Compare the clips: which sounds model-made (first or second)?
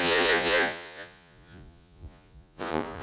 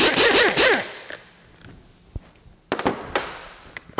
first